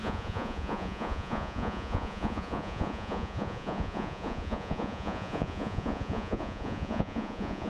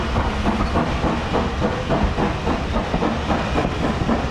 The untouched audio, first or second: second